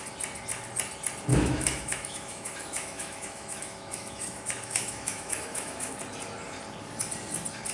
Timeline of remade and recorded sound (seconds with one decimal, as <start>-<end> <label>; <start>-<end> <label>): 0.0-1.3 recorded; 1.3-5.9 remade; 5.9-7.7 recorded